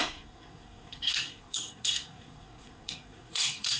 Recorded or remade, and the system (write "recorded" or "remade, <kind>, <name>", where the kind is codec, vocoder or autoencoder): remade, codec, SNAC